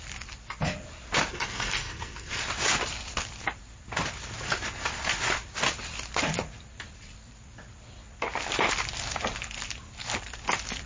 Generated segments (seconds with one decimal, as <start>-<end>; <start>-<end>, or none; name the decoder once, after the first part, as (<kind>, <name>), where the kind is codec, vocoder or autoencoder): 1.3-2.4 (codec, SNAC)